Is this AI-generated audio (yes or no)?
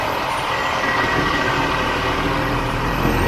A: yes